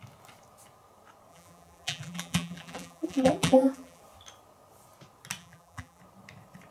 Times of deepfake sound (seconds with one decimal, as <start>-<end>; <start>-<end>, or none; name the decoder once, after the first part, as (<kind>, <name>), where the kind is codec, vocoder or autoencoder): 1.3-4.0 (vocoder, BigVGAN v2); 5.4-6.0